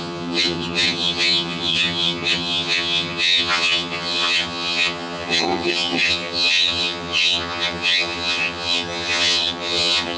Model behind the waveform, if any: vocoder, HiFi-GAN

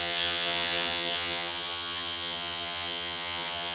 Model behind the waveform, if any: vocoder, HiFi-GAN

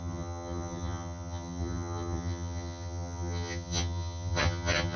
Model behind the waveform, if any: vocoder, HiFi-GAN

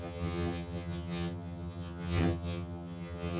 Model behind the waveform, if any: vocoder, HiFi-GAN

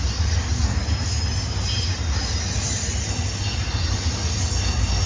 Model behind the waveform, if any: none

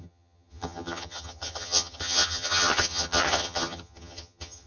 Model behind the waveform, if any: vocoder, HiFi-GAN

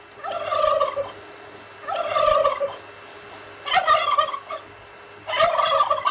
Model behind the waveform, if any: none